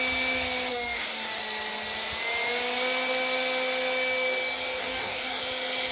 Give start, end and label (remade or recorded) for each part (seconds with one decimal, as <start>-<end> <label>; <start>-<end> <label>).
0.0-0.7 recorded; 0.7-1.4 remade; 1.4-4.8 recorded; 4.8-5.4 remade; 5.4-5.9 recorded